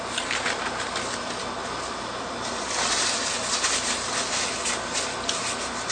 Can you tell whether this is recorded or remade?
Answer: recorded